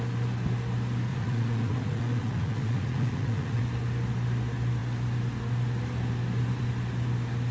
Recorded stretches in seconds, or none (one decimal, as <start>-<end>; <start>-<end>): 0.0-1.1; 3.6-7.5